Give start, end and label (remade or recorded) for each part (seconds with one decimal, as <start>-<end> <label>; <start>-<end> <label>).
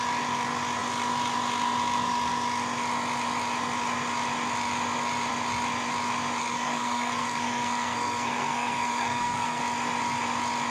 0.0-6.4 recorded; 6.4-9.6 remade; 9.6-10.7 recorded